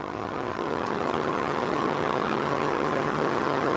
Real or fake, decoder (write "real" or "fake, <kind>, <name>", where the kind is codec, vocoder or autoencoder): fake, vocoder, HiFi-GAN